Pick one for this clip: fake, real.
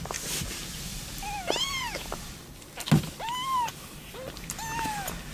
real